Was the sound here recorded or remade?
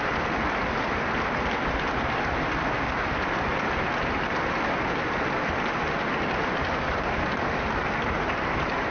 recorded